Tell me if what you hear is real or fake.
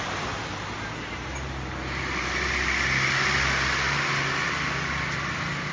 real